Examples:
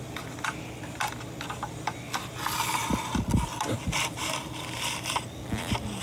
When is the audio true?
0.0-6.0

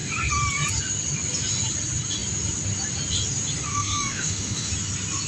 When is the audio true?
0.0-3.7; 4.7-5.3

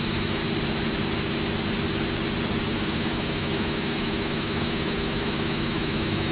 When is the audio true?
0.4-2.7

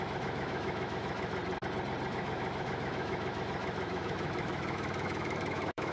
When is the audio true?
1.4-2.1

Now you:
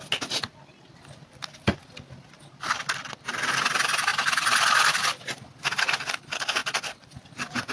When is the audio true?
0.0-7.7

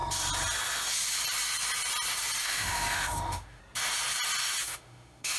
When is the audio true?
0.0-2.4; 3.6-4.6

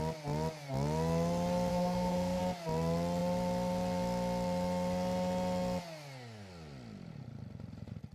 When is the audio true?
0.0-1.7; 2.4-8.1